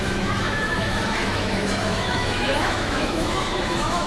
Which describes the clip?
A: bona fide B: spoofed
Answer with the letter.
B